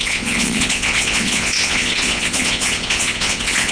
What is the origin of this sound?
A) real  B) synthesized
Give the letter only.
B